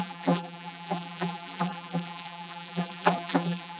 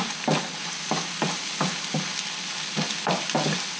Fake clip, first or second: first